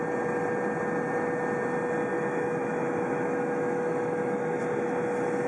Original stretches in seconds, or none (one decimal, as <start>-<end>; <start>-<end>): 0.0-2.1; 4.6-5.5